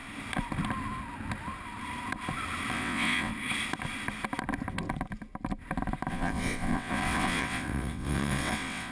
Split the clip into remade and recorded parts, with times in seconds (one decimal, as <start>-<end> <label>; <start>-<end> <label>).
0.0-2.7 recorded; 2.7-3.3 remade; 3.3-6.1 recorded; 6.1-8.9 remade